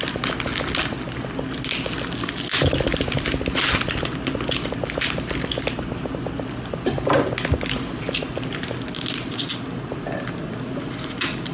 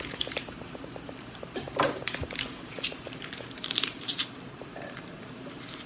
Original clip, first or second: first